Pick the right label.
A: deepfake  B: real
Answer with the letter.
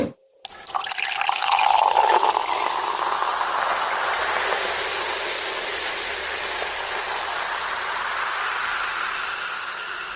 B